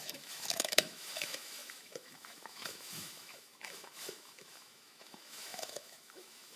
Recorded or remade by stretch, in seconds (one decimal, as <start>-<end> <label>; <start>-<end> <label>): 0.0-6.6 remade

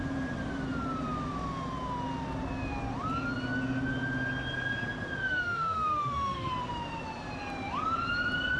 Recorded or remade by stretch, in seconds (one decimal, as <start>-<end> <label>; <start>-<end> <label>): 0.0-5.2 recorded; 5.2-6.5 remade; 6.5-8.6 recorded

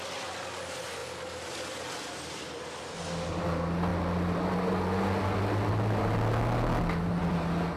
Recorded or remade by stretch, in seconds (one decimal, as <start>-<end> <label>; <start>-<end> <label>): 0.0-7.8 recorded

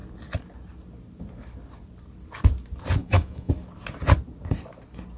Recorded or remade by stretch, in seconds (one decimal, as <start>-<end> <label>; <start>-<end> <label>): 0.0-3.0 recorded; 3.0-3.5 remade; 3.5-5.2 recorded

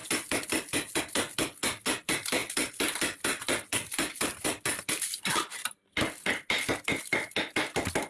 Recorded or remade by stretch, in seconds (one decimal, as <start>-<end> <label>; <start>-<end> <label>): 0.0-8.1 recorded

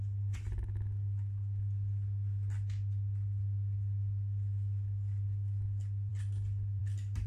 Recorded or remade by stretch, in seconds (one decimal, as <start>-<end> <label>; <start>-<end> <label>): 0.0-7.3 recorded

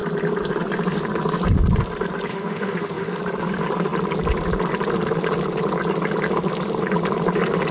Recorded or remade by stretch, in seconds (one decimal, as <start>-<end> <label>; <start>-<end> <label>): 0.0-2.3 recorded; 2.3-3.2 remade; 3.2-7.7 recorded

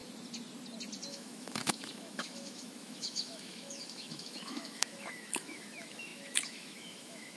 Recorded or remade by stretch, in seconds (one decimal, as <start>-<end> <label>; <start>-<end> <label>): 0.0-1.1 recorded; 1.1-7.4 remade